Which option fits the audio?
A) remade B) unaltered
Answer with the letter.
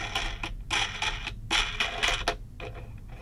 B